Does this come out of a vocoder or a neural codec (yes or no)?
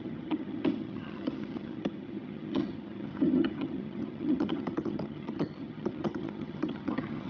yes